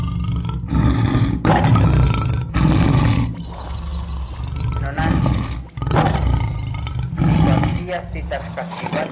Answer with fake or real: real